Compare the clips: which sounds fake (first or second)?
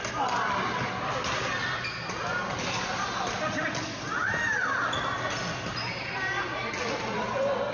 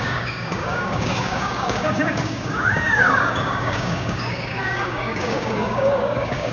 second